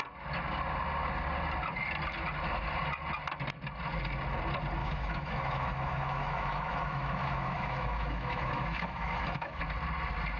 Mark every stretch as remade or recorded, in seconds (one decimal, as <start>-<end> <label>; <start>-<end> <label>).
0.0-4.8 recorded; 4.8-9.6 remade; 9.6-10.4 recorded